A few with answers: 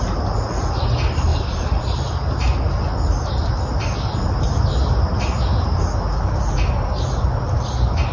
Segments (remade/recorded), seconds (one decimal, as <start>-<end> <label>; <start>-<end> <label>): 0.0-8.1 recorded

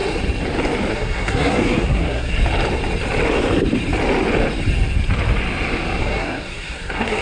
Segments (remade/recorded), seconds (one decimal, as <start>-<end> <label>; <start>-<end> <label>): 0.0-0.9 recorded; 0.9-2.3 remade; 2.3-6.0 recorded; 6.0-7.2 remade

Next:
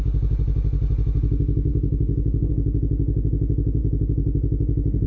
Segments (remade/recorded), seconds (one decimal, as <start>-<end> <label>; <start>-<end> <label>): 0.0-1.7 recorded; 1.7-2.5 remade; 2.5-5.1 recorded